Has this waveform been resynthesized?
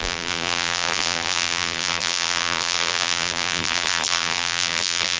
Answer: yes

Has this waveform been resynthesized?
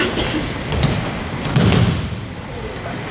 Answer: yes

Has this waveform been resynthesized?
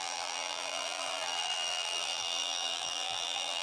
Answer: yes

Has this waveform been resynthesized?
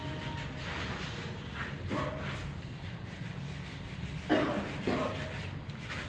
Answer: no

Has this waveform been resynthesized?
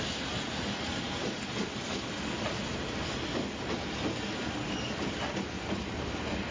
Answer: no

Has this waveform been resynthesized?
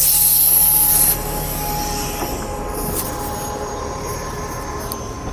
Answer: no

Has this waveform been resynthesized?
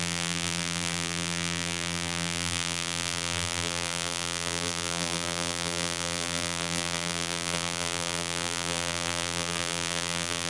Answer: yes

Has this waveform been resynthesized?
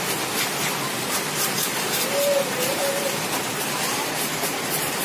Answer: yes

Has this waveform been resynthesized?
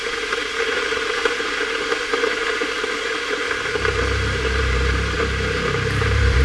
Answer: yes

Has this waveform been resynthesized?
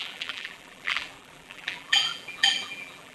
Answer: yes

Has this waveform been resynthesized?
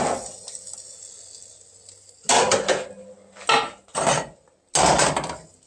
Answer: no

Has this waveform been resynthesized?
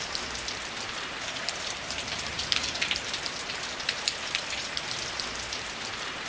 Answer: yes